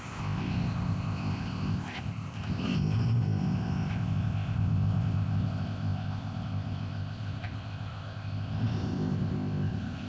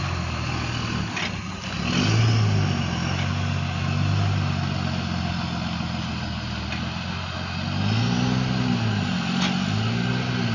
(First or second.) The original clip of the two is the second